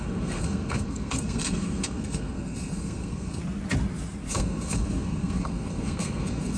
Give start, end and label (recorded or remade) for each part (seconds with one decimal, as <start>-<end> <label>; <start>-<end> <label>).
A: 0.0-3.4 remade; 3.4-4.3 recorded; 4.3-6.6 remade